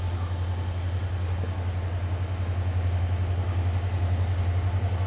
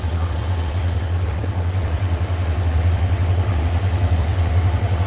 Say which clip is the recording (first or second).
first